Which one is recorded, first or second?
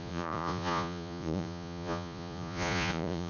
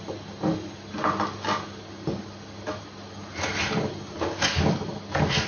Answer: second